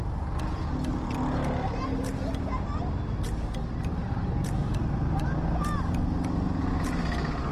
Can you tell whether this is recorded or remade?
recorded